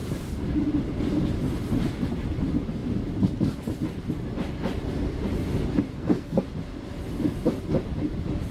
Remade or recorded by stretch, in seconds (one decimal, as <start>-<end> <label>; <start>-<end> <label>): 0.0-5.9 recorded; 5.9-6.4 remade; 6.4-8.5 recorded